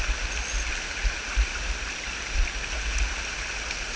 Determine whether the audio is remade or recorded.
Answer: recorded